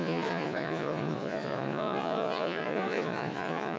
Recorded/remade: remade